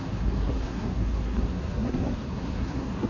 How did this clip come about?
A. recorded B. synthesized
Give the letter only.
B